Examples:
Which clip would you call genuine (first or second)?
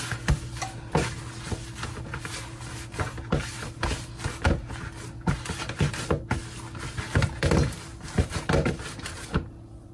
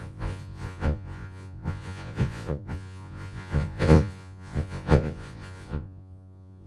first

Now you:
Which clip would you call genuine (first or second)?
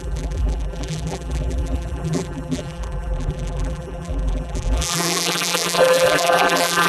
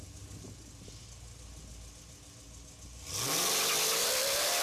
second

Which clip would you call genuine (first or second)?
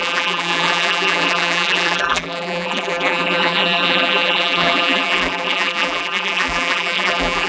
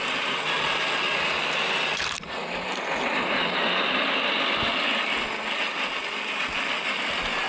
second